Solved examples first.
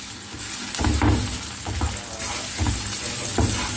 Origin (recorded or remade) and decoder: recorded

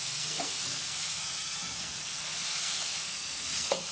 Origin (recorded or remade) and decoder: remade, codec, SNAC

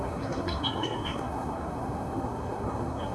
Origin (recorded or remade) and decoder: remade, codec, SNAC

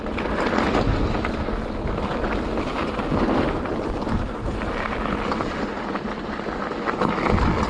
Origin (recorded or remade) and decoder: recorded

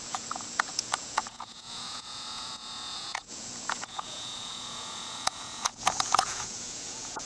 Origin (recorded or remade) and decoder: remade, vocoder, Vocos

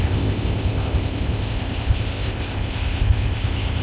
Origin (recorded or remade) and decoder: remade, codec, ZipCodec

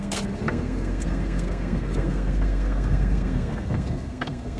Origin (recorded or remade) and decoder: remade, codec, SNAC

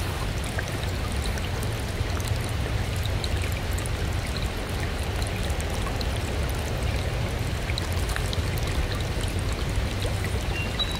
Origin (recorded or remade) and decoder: recorded